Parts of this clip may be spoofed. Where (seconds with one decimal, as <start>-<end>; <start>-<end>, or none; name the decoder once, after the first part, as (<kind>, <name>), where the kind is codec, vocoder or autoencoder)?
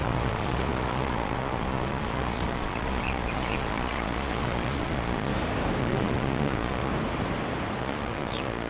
0.0-5.3 (vocoder, Vocos); 5.8-6.9; 7.8-8.7